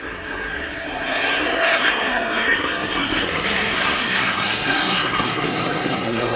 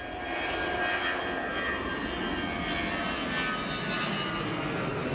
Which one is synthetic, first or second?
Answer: first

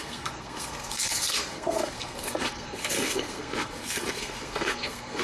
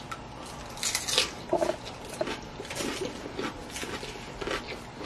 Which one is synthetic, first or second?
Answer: first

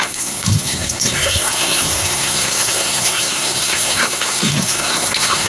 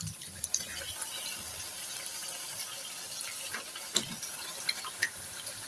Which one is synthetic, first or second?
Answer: first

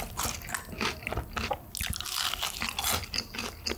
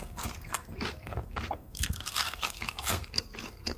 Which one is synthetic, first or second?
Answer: second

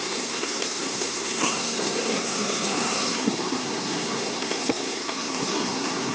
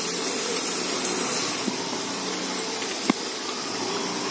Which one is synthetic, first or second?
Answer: first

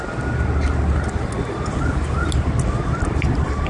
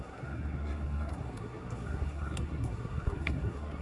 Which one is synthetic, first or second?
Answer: second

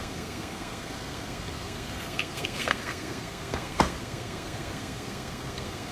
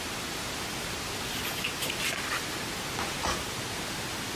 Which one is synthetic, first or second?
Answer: first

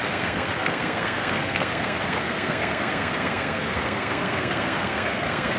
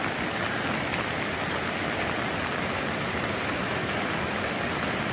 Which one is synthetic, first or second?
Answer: first